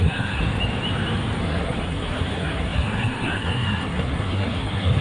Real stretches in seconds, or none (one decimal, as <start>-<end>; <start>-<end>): 0.4-1.4